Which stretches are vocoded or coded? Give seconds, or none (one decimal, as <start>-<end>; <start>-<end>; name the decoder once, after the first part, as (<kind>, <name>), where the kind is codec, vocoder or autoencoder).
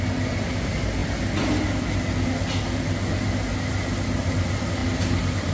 none